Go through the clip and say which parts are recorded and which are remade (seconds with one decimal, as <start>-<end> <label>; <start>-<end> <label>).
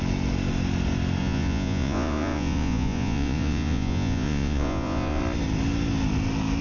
0.0-1.2 recorded; 1.2-5.2 remade; 5.2-6.6 recorded